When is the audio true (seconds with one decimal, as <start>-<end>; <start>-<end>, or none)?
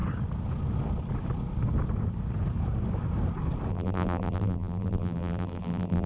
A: 0.0-3.7